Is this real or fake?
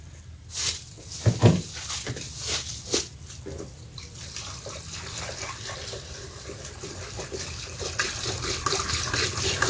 real